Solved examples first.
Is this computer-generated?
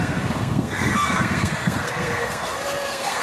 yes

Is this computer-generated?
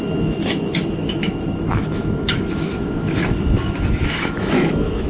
yes